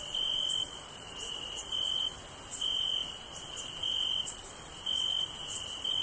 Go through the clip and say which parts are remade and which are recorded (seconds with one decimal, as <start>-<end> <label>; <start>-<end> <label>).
0.0-6.0 recorded